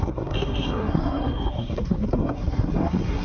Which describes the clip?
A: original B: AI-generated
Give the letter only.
B